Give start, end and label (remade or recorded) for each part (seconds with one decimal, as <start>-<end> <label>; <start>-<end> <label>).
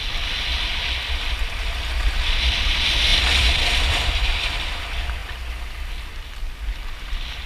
0.0-0.5 recorded; 0.5-1.5 remade; 1.5-3.1 recorded; 3.1-4.8 remade; 4.8-7.5 recorded